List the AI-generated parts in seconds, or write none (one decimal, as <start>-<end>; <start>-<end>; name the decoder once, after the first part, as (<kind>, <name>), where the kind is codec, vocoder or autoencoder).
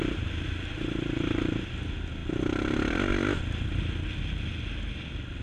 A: 0.0-1.7 (vocoder, BigVGAN v2)